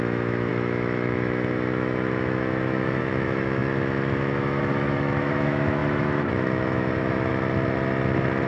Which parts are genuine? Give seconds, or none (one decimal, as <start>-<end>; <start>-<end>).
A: 7.3-8.5